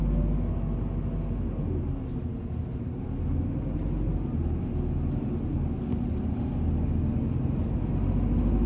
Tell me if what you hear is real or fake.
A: real